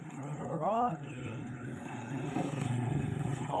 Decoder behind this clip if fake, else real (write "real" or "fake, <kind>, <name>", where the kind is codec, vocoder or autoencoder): fake, codec, SNAC